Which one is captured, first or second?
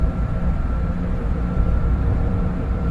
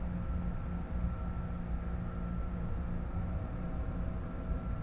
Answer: second